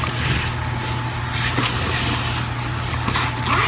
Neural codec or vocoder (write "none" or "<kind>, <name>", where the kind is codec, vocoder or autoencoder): none